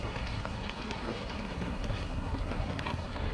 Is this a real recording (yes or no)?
no